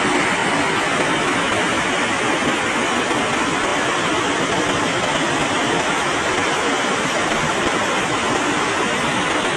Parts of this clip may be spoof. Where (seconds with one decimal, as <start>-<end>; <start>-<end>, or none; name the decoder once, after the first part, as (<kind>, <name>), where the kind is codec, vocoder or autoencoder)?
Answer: 5.4-8.4 (vocoder, BigVGAN v2)